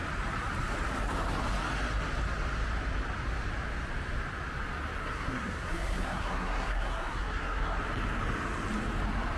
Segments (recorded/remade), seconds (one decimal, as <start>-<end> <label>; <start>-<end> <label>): 0.0-5.0 recorded; 5.0-7.8 remade; 7.8-9.4 recorded